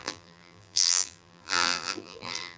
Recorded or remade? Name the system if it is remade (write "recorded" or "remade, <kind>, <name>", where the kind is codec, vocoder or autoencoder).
remade, vocoder, BigVGAN v2